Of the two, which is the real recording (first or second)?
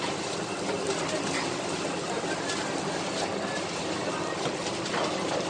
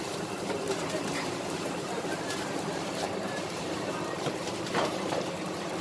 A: first